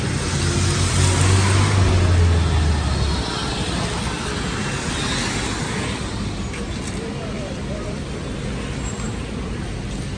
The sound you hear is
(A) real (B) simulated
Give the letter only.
A